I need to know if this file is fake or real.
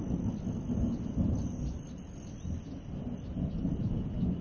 real